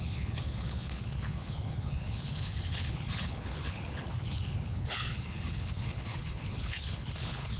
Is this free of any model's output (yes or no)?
no